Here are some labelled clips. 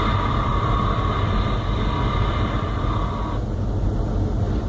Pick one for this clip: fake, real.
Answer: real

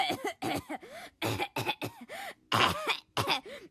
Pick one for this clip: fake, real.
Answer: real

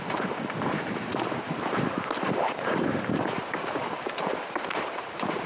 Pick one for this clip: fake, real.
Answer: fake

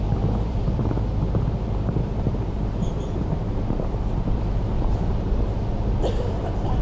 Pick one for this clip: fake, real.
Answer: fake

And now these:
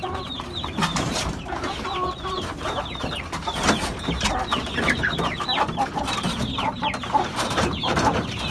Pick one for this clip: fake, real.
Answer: fake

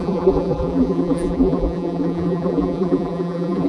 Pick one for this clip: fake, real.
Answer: fake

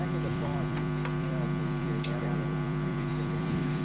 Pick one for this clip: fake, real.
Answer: fake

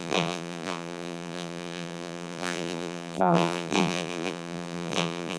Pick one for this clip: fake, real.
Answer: fake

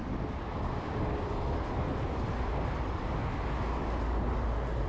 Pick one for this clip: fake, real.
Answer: real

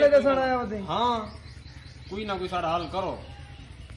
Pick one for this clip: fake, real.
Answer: real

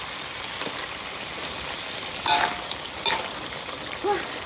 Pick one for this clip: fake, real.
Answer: fake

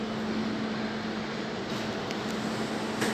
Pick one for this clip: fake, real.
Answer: real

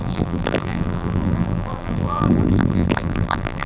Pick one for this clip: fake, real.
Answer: fake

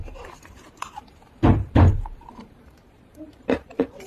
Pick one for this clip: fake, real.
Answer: fake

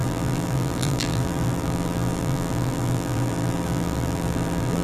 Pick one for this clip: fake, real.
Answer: fake